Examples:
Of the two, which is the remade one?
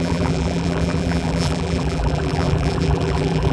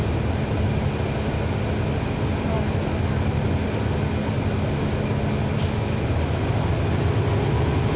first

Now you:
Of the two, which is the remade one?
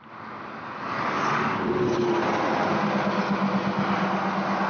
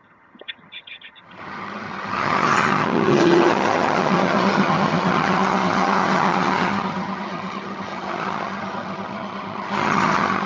second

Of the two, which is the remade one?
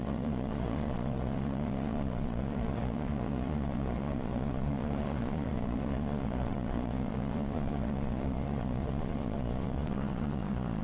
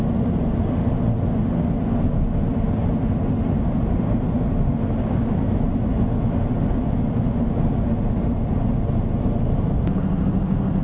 first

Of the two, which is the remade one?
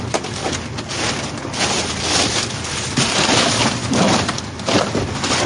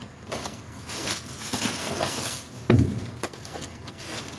second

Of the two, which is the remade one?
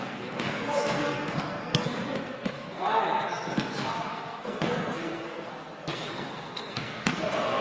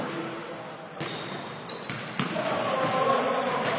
first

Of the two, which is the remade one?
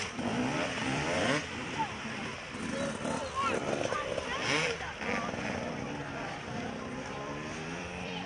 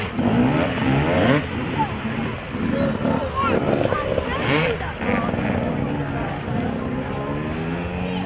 first